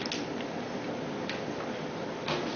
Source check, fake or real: real